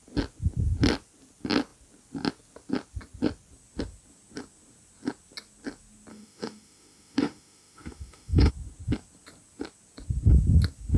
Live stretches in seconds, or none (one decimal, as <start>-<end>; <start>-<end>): 0.0-6.1; 8.5-11.0